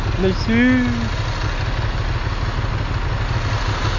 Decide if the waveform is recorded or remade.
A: recorded